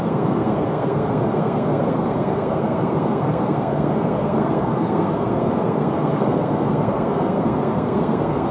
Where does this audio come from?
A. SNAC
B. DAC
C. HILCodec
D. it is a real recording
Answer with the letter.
A